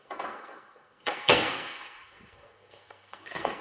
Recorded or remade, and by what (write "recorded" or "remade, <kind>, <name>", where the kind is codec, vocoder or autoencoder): remade, codec, SNAC